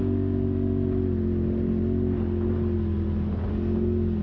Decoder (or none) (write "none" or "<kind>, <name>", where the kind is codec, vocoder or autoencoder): none